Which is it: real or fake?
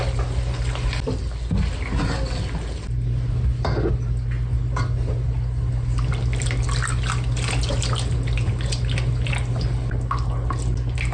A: real